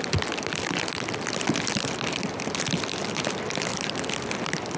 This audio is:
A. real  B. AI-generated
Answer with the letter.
A